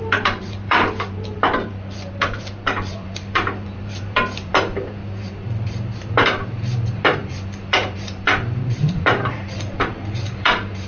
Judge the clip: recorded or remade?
remade